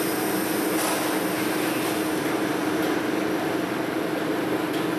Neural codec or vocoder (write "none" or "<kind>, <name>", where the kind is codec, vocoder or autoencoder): none